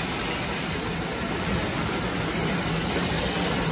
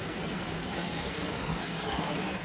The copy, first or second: second